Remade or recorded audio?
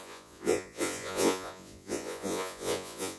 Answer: remade